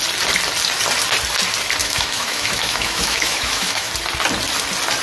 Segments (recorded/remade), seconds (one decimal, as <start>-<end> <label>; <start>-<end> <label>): 0.0-1.8 recorded; 1.8-3.9 remade; 3.9-5.0 recorded